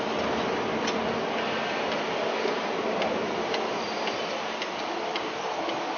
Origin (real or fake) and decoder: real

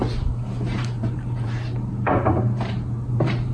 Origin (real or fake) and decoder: fake, vocoder, BigVGAN v2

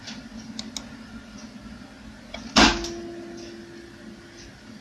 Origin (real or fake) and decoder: real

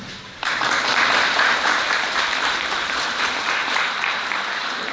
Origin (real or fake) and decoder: fake, vocoder, BigVGAN v2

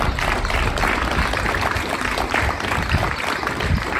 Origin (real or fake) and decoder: fake, vocoder, BigVGAN v2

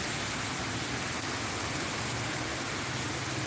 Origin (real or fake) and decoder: real